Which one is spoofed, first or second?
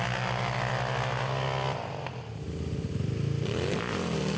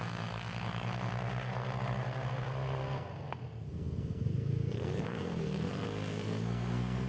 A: second